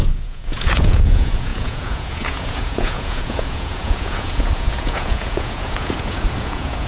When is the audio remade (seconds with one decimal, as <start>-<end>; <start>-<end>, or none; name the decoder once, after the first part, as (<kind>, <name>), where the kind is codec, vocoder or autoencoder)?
0.0-6.9 (vocoder, Vocos)